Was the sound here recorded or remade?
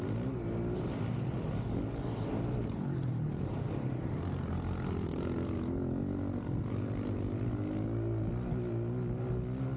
recorded